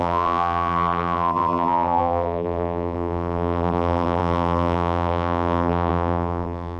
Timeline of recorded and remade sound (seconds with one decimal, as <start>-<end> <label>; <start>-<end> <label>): 0.0-6.8 remade